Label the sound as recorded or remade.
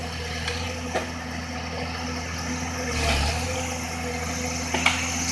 recorded